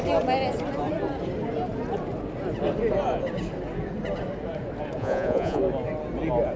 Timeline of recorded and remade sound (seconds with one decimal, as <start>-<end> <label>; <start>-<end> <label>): 0.0-5.0 recorded; 5.0-5.6 remade; 5.6-6.6 recorded